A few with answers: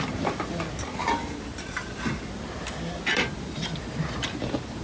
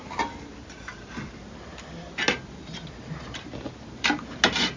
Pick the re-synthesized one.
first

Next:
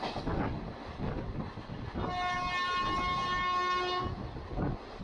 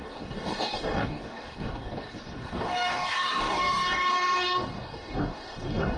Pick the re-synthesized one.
second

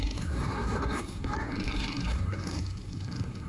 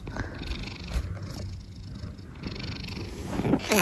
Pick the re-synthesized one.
first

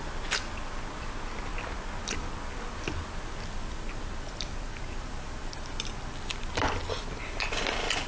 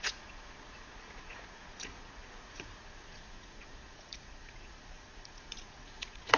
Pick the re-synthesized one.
second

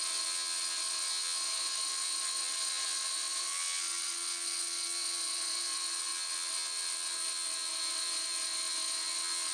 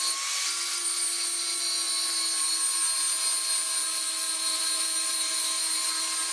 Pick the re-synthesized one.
first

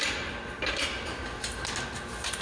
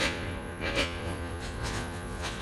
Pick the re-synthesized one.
second